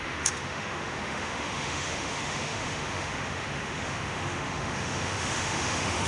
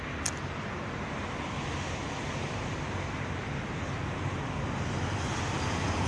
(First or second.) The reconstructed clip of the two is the first